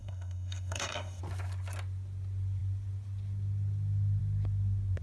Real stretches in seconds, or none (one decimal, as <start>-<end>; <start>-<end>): 1.2-5.0